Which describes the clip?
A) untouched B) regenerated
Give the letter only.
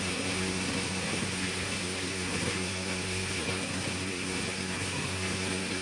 B